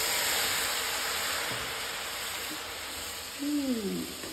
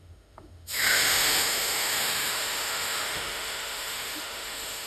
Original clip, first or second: first